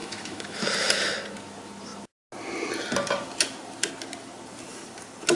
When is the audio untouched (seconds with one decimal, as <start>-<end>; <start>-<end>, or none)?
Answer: 0.7-5.4